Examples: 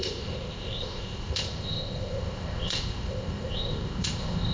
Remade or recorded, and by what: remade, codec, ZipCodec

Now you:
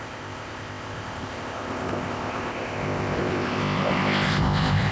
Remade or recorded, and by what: remade, codec, ZipCodec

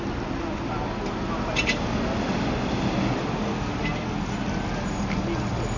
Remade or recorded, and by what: recorded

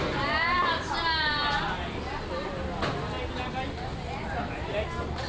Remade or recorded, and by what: recorded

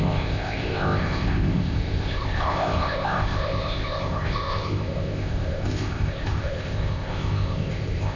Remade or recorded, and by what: remade, codec, ZipCodec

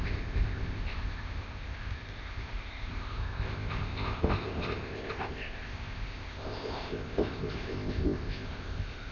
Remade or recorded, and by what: remade, codec, ZipCodec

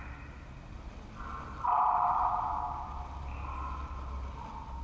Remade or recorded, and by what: recorded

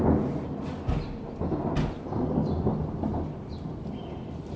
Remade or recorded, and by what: recorded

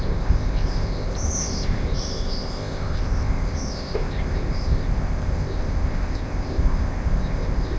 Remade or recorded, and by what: remade, codec, ZipCodec